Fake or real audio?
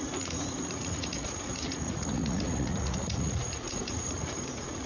fake